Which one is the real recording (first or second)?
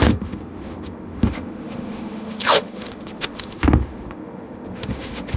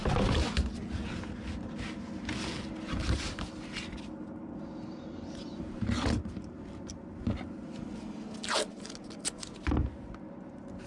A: second